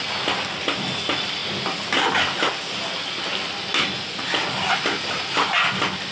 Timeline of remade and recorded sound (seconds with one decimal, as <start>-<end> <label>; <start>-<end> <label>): 0.0-6.1 recorded

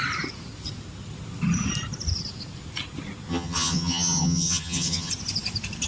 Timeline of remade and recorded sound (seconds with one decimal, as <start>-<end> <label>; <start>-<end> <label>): 0.0-3.3 recorded; 3.3-5.1 remade; 5.1-5.9 recorded

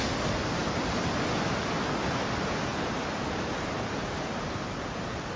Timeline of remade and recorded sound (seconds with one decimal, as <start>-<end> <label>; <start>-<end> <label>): 0.0-5.4 recorded

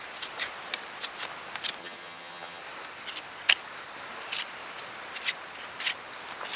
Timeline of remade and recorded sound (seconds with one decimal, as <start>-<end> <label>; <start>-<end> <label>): 0.0-1.8 recorded; 1.8-2.6 remade; 2.6-6.6 recorded